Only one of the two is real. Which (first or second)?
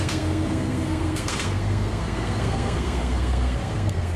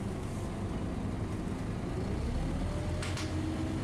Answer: second